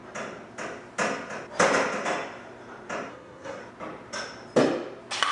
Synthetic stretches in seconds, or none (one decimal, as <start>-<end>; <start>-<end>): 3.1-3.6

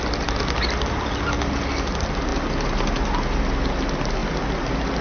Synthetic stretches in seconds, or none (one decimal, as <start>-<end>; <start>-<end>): none

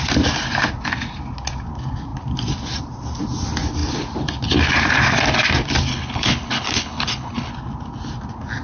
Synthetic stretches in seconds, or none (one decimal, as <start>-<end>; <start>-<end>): 5.9-7.5

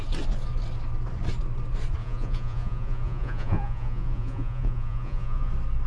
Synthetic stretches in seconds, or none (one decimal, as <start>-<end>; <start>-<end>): 2.0-5.5

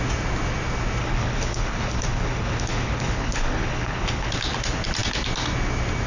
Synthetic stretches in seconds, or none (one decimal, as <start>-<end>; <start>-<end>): 1.0-4.3

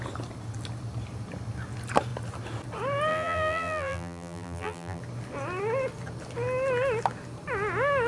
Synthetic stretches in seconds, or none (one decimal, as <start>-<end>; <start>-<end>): 3.1-5.0

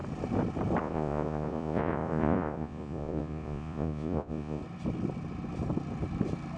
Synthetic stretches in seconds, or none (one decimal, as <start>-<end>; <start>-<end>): 0.8-4.6